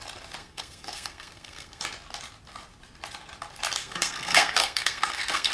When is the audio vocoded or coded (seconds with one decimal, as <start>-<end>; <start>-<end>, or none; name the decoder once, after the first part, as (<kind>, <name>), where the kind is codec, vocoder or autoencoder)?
0.4-1.8 (codec, SNAC); 3.8-5.5